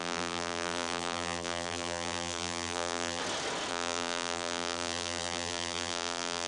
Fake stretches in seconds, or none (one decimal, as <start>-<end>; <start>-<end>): 0.0-3.2; 3.7-6.5